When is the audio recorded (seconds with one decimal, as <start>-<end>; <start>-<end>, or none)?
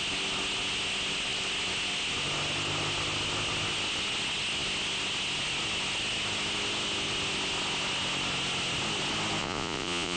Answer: 0.0-9.4